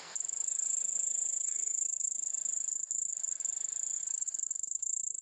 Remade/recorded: remade